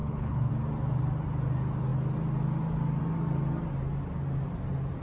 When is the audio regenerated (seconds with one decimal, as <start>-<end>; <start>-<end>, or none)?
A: 0.0-0.5